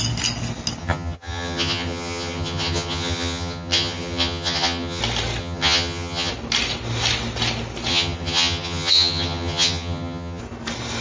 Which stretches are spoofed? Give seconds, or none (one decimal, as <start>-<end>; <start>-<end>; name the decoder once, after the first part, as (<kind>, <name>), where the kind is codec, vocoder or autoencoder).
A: 0.8-5.0 (vocoder, HiFi-GAN); 5.4-6.3; 7.9-10.4

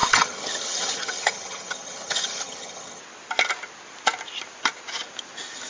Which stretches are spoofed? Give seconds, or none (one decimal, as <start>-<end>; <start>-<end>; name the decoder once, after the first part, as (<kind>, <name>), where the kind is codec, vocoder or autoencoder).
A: 0.0-3.0 (vocoder, HiFi-GAN)

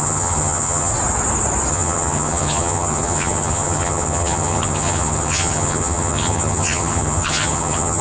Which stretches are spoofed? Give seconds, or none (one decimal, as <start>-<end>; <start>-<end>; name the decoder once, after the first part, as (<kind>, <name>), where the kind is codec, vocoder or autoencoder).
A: 0.0-0.9 (vocoder, HiFi-GAN); 1.7-8.0